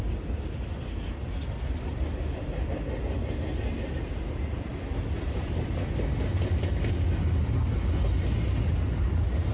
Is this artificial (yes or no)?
no